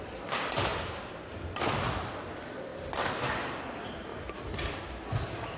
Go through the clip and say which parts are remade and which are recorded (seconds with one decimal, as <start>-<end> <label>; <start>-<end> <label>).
0.0-0.7 remade; 0.7-1.9 recorded; 1.9-2.7 remade; 2.7-3.6 recorded; 3.6-4.1 remade; 4.1-4.7 recorded; 4.7-5.6 remade